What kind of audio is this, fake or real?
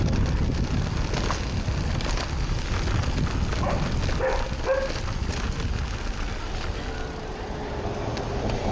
real